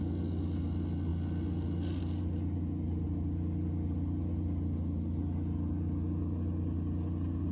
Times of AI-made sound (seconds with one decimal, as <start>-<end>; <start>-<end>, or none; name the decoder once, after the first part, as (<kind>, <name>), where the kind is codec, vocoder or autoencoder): none